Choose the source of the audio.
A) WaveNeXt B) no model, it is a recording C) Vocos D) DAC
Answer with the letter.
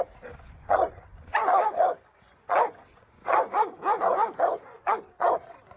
C